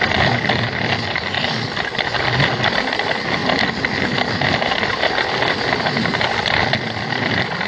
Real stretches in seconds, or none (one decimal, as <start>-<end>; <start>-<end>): 0.0-7.7